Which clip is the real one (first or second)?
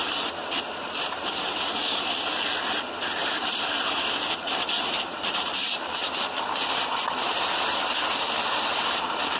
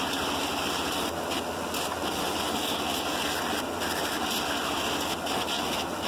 second